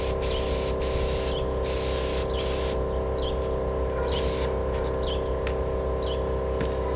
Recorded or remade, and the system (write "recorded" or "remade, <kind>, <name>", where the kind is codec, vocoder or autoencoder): recorded